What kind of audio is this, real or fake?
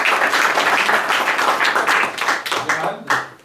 real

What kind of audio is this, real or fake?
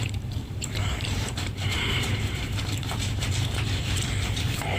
fake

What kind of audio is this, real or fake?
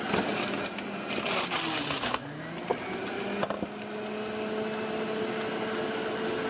real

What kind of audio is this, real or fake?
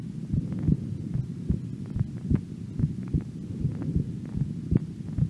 real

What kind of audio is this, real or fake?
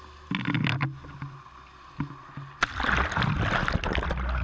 real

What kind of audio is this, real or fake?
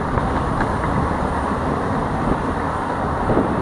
real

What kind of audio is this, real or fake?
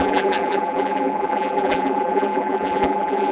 fake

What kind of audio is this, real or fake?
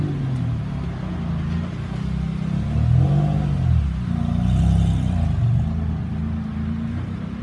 real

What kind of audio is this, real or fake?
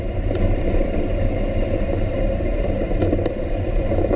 fake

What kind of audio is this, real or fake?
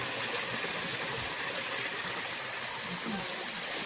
real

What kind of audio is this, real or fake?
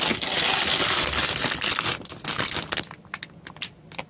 real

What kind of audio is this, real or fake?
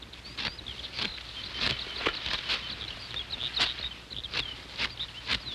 real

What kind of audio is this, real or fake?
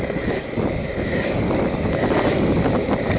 real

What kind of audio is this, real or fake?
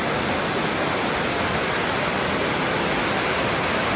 real